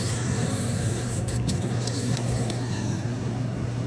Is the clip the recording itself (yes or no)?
no